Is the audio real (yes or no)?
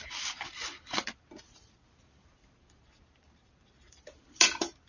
no